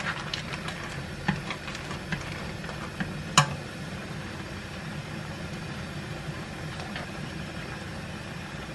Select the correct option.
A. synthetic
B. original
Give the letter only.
B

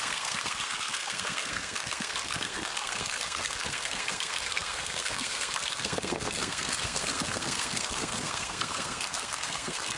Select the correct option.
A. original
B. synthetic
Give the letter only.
B